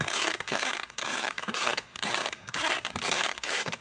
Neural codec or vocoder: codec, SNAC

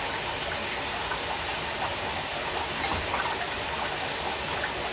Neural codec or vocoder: none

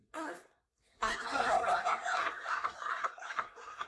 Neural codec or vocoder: codec, SNAC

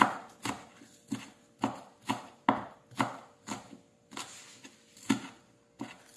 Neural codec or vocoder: none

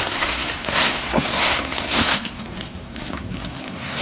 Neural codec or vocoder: codec, SNAC